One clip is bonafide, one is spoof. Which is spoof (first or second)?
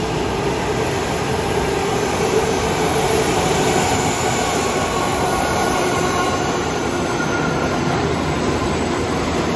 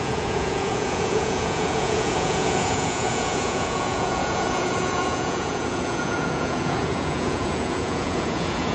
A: second